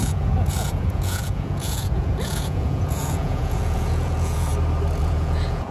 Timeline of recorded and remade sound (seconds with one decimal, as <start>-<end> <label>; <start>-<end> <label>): 0.0-4.5 remade; 4.5-5.0 recorded; 5.0-5.7 remade